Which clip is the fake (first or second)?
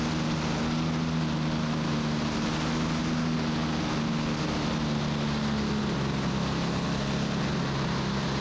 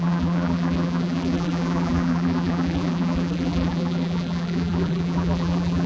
second